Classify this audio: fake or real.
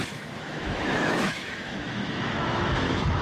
fake